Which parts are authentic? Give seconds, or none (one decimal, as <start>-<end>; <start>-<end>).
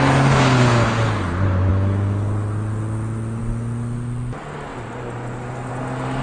0.0-6.2